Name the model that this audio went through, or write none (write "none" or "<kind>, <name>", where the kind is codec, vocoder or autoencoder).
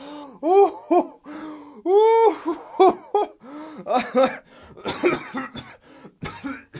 none